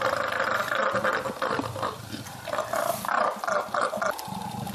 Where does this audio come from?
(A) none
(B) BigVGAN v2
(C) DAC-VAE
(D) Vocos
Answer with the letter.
A